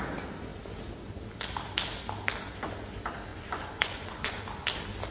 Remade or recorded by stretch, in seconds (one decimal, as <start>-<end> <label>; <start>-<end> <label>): 0.0-3.3 recorded; 3.3-4.4 remade; 4.4-5.1 recorded

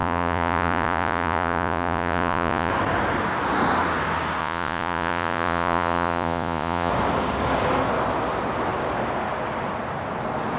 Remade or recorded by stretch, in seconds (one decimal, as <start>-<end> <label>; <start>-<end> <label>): 0.0-2.7 remade; 2.7-4.4 recorded; 4.4-6.9 remade; 6.9-10.6 recorded